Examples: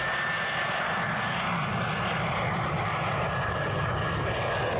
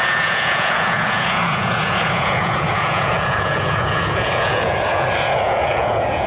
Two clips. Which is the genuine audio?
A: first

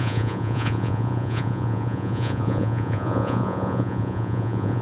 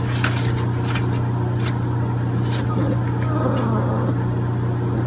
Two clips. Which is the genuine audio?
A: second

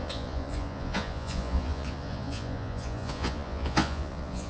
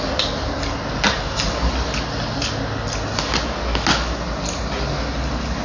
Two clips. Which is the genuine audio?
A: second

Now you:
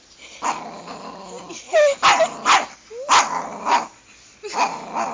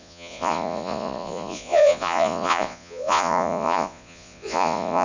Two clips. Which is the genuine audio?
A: first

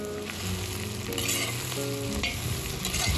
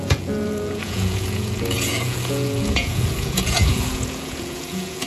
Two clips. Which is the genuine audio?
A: first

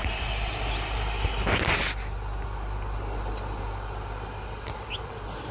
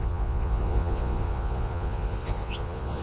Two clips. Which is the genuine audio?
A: first